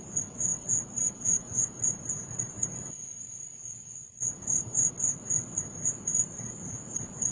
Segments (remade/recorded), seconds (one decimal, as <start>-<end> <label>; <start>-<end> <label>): 0.0-0.5 recorded; 0.5-4.9 remade; 4.9-6.1 recorded; 6.1-6.6 remade; 6.6-7.3 recorded